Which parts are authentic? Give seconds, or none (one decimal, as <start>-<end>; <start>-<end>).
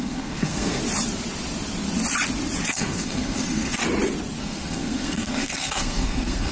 0.8-2.7; 3.8-4.4